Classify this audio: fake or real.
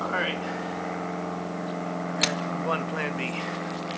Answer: real